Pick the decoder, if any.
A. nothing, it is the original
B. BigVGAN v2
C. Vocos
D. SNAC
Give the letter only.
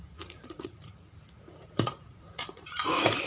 C